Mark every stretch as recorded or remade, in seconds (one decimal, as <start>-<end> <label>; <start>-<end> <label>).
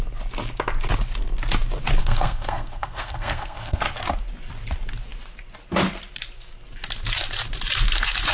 0.0-2.0 recorded; 2.0-3.8 remade; 3.8-8.3 recorded